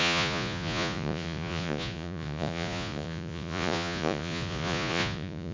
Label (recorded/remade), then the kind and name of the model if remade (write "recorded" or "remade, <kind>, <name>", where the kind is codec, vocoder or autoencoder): remade, vocoder, Vocos